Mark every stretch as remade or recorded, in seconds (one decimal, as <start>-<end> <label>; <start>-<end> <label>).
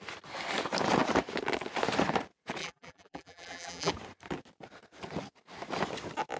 0.0-2.6 recorded; 2.6-3.9 remade; 3.9-6.4 recorded